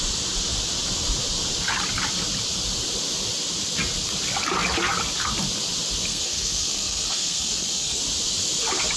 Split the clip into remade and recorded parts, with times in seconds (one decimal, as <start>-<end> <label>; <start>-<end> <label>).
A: 0.0-6.1 recorded; 6.1-8.0 remade; 8.0-9.0 recorded